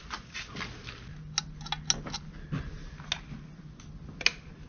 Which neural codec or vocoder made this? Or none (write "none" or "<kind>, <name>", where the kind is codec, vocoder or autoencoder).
none